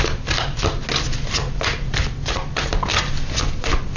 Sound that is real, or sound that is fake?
real